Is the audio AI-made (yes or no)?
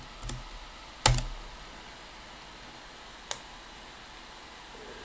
no